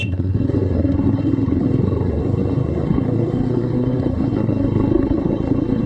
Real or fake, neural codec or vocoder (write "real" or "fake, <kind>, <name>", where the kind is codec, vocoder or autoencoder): fake, codec, SNAC